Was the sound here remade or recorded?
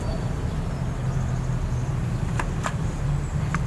recorded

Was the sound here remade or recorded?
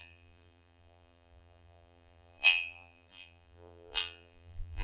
remade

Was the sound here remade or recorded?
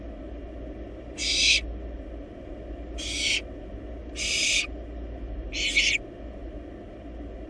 recorded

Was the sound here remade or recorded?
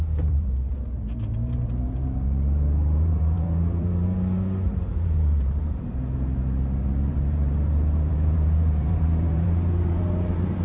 remade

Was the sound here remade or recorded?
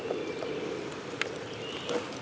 recorded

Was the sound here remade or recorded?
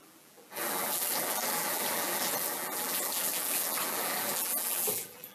remade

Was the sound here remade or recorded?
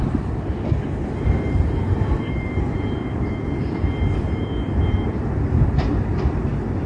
remade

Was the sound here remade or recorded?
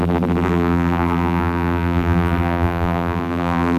remade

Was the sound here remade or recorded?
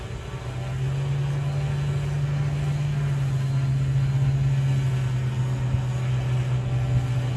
recorded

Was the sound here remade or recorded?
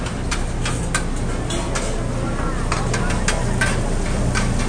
recorded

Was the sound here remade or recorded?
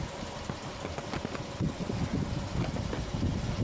recorded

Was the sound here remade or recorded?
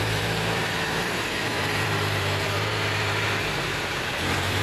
remade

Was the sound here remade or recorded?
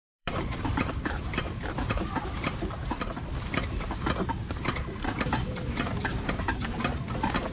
remade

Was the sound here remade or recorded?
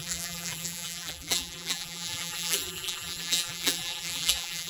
remade